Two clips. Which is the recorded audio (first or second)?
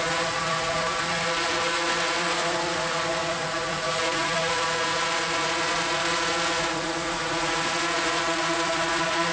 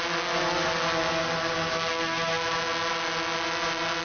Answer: second